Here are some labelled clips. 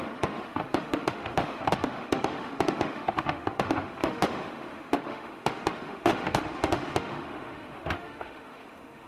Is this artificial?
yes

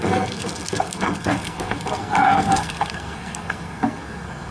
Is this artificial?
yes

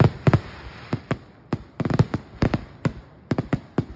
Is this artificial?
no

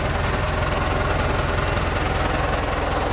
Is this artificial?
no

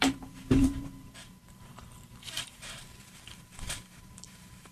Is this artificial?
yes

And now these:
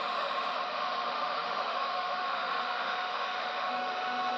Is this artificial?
yes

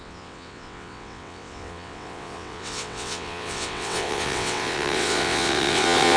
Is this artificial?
yes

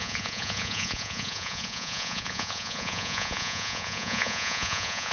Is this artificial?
yes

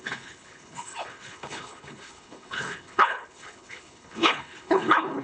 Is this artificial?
yes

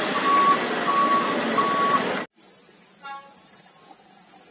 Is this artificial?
no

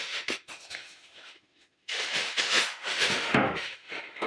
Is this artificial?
yes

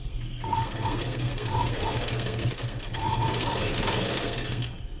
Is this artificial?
yes